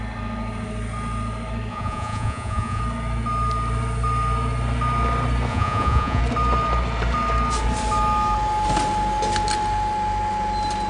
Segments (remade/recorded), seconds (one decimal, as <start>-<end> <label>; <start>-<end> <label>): 0.0-1.7 recorded; 1.7-2.8 remade; 2.8-5.5 recorded; 5.5-6.2 remade; 6.2-10.9 recorded